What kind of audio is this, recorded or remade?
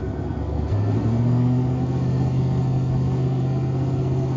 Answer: remade